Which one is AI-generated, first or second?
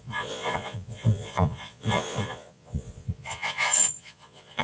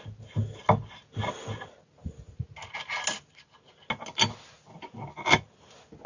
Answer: first